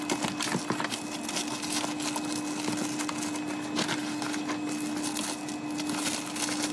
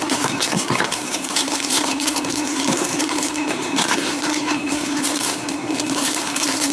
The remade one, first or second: second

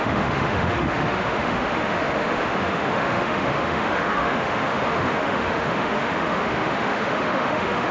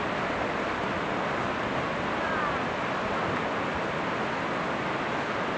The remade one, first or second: first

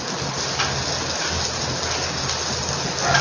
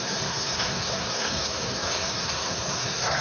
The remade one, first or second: second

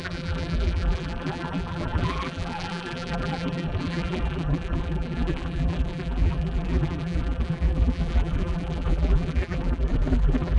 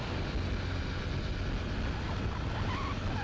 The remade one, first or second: first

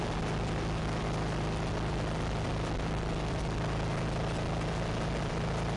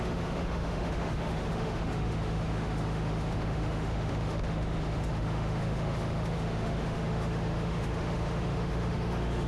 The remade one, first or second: second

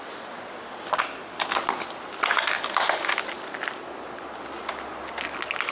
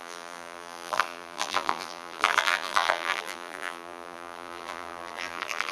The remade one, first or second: second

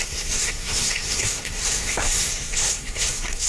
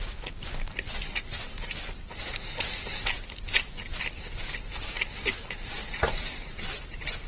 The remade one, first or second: first